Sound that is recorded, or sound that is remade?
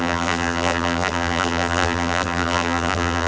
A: remade